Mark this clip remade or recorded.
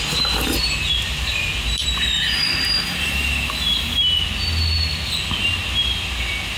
recorded